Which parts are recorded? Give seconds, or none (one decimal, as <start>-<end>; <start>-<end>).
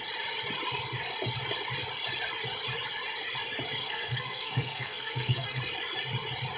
0.0-3.8; 5.6-6.6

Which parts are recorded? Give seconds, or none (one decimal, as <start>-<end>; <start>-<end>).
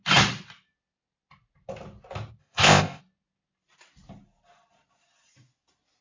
0.0-2.4; 3.0-6.0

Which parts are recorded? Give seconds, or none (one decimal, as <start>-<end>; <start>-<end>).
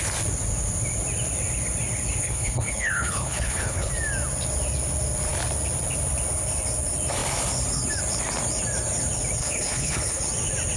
0.0-2.2; 3.9-9.4; 10.2-10.8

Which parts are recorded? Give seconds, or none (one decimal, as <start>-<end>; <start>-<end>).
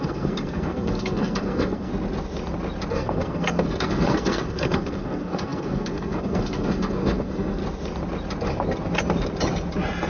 1.9-2.9; 7.6-10.1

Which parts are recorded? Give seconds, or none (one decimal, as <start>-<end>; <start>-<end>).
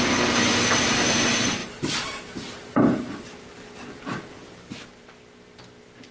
0.0-1.6; 5.2-6.1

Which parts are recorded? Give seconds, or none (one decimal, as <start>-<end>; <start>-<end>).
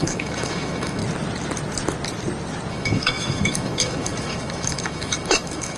1.0-2.7